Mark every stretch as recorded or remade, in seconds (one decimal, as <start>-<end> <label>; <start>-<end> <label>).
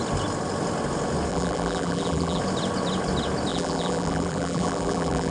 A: 0.0-1.3 recorded; 1.3-2.4 remade; 2.4-3.5 recorded; 3.5-5.3 remade